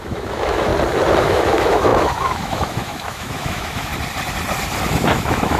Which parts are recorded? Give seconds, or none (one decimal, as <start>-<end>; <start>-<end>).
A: 0.7-1.2; 3.9-5.1